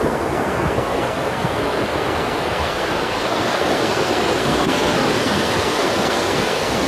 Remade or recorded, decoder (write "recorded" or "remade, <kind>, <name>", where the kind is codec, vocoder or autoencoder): remade, codec, SNAC